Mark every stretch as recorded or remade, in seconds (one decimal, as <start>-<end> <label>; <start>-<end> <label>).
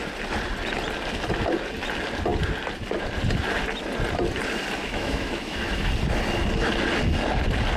0.0-4.8 recorded; 4.8-5.9 remade; 5.9-7.8 recorded